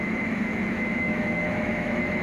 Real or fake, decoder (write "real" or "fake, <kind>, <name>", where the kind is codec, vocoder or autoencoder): fake, autoencoder, DAC-VAE